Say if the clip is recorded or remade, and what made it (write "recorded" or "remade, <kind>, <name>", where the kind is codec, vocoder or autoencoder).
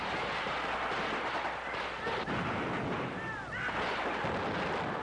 recorded